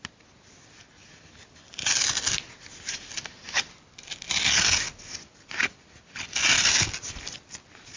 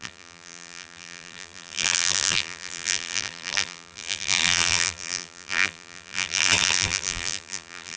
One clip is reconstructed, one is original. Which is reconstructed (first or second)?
second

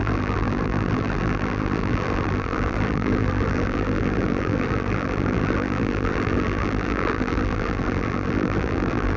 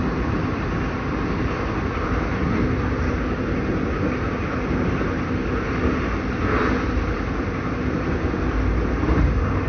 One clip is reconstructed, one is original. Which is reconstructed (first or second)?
first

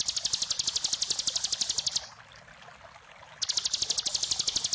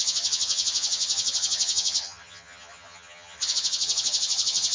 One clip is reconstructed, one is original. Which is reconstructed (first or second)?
second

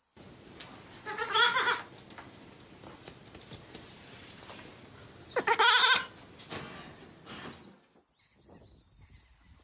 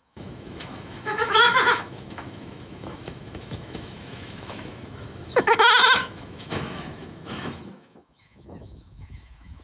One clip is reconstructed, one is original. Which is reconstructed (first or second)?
second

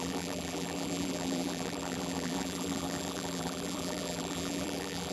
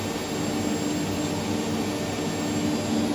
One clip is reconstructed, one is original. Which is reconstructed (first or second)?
first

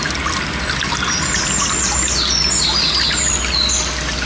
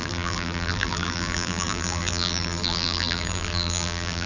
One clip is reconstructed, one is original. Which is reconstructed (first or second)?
second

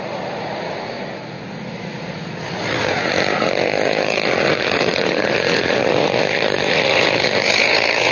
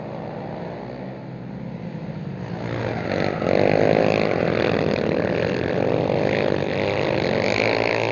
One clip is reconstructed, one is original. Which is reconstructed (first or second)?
first